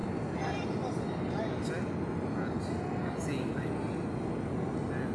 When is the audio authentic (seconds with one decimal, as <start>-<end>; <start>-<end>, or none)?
0.0-5.1